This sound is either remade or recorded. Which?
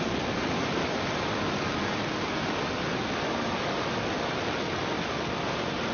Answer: recorded